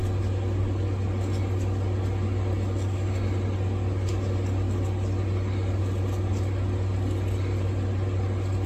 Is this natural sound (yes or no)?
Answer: yes